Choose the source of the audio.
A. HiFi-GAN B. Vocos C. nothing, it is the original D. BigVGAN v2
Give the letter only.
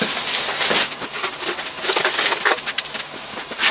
C